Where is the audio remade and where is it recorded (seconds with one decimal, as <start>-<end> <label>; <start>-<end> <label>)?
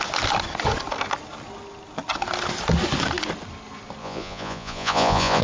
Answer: 0.0-4.0 recorded; 4.0-5.4 remade